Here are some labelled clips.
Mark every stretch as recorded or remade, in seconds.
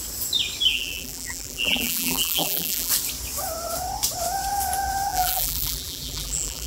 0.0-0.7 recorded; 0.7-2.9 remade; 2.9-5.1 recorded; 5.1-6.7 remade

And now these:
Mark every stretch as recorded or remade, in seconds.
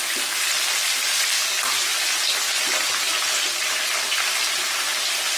0.0-5.4 recorded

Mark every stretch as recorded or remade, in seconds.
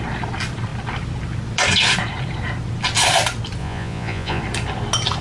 0.0-3.6 recorded; 3.6-4.4 remade; 4.4-5.2 recorded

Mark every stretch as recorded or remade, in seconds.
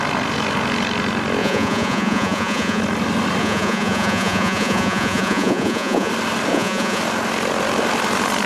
0.0-1.4 recorded; 1.4-2.8 remade; 2.8-3.4 recorded; 3.4-6.1 remade; 6.1-6.5 recorded; 6.5-7.0 remade; 7.0-8.5 recorded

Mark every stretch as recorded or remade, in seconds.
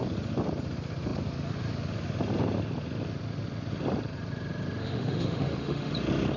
0.0-4.8 recorded; 4.8-5.9 remade; 5.9-6.4 recorded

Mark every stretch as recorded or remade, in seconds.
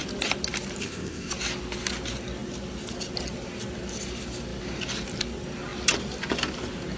0.0-0.8 recorded; 0.8-1.3 remade; 1.3-7.0 recorded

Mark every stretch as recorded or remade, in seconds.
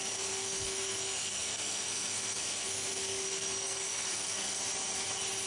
0.0-4.6 remade; 4.6-5.5 recorded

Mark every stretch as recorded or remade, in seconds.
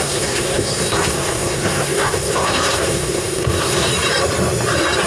0.0-3.9 remade; 3.9-5.1 recorded